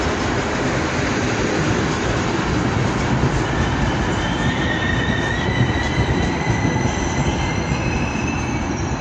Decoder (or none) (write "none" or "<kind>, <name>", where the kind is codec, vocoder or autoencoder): none